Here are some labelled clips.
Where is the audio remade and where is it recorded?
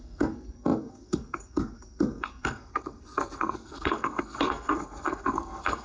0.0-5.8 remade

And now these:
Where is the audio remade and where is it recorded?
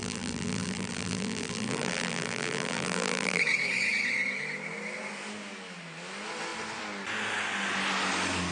0.0-3.4 remade; 3.4-8.5 recorded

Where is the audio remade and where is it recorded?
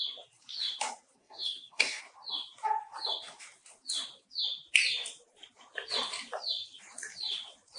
0.0-1.2 recorded; 1.2-2.0 remade; 2.0-7.8 recorded